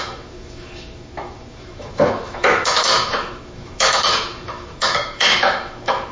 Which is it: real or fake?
fake